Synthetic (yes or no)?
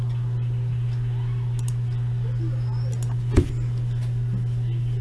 no